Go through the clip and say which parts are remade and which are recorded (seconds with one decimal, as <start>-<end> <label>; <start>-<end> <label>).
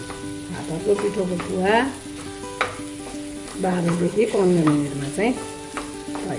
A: 0.0-3.5 recorded; 3.5-4.9 remade; 4.9-6.4 recorded